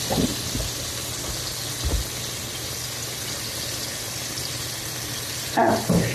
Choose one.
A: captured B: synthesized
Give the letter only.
A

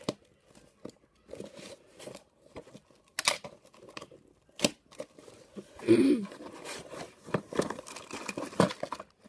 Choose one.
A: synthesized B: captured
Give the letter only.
B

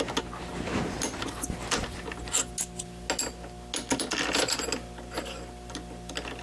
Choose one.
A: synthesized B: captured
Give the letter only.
B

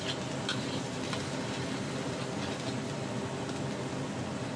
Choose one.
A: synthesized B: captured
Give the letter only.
B